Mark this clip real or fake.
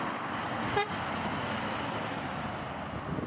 real